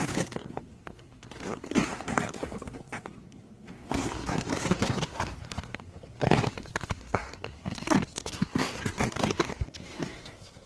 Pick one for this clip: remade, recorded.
remade